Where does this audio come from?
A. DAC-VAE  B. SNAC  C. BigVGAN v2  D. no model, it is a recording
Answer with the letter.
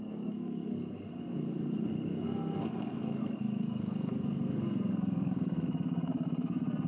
B